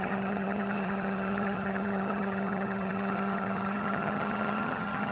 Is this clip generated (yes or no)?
yes